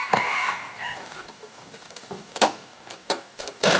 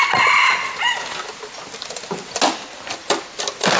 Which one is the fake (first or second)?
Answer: first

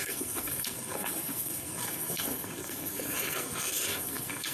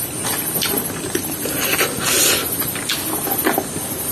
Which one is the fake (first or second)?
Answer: first